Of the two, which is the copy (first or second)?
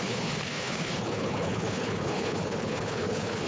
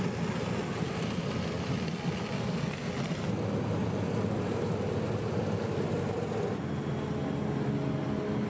first